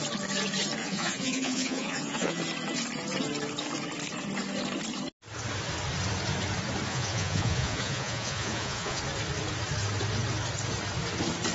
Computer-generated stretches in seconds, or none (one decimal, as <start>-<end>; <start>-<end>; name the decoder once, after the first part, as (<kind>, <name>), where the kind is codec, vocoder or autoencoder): 0.8-2.4 (vocoder, Vocos); 6.9-9.0